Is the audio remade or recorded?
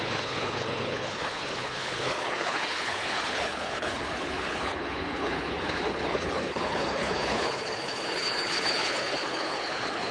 remade